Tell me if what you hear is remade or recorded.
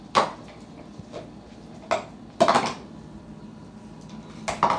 recorded